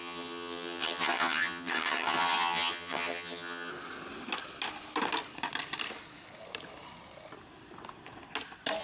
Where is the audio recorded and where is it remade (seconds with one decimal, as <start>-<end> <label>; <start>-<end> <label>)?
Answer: 0.0-3.7 remade; 3.7-8.8 recorded